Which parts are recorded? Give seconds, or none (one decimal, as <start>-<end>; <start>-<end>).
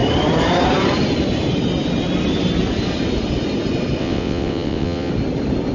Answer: 0.0-4.0; 5.1-5.7